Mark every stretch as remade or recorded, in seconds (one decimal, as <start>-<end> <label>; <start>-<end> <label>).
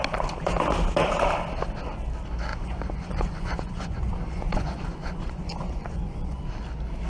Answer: 0.0-2.5 recorded; 2.5-6.4 remade; 6.4-7.1 recorded